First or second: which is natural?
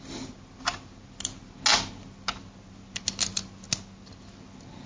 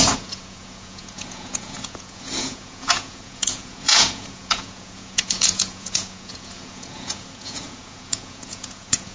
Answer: first